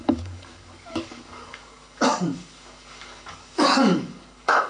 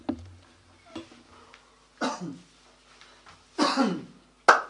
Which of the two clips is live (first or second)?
second